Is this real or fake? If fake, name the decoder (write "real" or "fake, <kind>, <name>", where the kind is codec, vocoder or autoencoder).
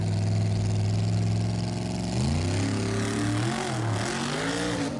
real